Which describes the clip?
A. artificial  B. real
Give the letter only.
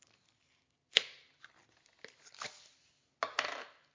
B